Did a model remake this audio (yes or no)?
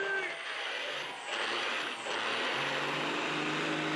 no